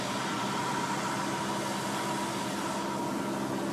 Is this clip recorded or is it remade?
recorded